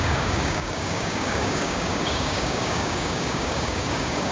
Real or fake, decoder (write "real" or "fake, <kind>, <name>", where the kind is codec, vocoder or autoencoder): fake, codec, DAC